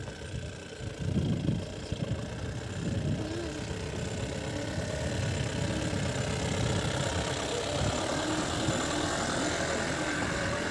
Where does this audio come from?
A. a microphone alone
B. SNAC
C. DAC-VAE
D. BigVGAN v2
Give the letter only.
A